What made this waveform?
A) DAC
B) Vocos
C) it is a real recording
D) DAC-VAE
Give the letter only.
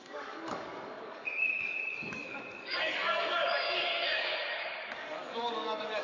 A